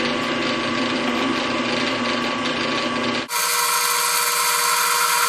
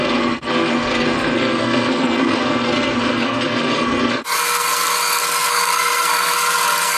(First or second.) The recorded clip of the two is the first